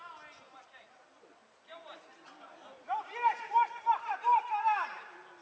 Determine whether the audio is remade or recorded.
recorded